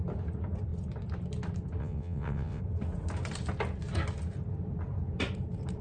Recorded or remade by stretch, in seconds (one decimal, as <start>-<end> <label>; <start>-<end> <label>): 0.0-1.8 recorded; 1.8-2.6 remade; 2.6-5.8 recorded